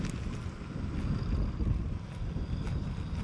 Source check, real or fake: real